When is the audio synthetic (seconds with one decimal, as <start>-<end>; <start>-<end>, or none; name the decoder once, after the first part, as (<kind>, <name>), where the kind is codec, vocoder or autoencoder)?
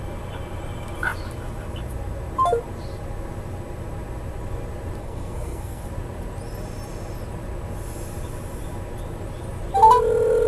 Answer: 5.0-5.8 (codec, SNAC)